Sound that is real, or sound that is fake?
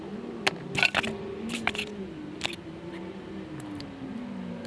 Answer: real